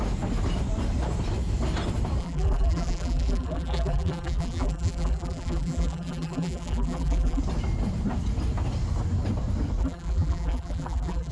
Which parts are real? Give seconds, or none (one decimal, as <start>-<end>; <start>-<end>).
0.0-2.2; 7.4-9.8